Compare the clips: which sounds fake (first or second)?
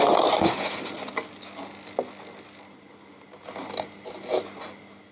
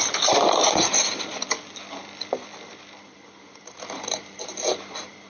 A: second